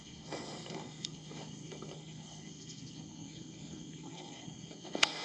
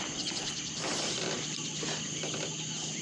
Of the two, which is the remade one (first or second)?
first